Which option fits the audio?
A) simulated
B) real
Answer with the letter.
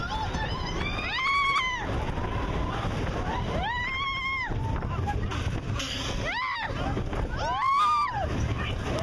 B